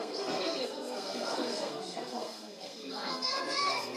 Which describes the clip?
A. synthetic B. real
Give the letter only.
A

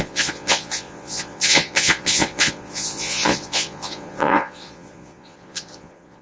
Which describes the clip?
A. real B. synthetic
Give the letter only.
B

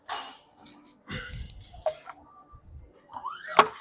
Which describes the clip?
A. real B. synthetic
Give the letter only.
A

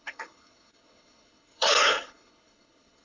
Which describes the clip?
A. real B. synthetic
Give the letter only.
B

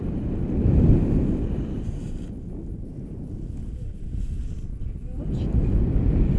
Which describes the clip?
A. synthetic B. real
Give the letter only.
B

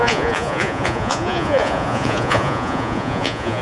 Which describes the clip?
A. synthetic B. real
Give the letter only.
A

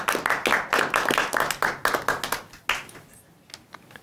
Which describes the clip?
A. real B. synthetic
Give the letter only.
A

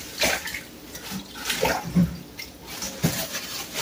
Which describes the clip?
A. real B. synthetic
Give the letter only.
A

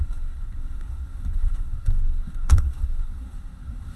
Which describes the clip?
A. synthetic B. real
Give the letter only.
A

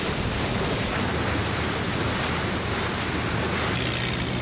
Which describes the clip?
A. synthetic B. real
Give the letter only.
B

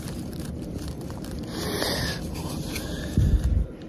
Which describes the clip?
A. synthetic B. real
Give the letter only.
A